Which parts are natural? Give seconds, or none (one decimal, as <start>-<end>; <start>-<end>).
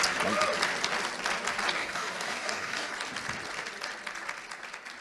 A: 0.0-1.8; 2.9-5.0